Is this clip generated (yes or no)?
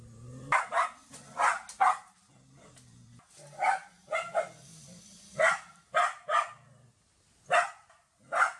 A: no